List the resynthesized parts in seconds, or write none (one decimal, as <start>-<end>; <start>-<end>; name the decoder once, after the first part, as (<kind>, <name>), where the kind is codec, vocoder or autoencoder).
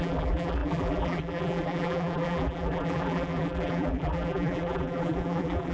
0.0-5.7 (vocoder, BigVGAN v2)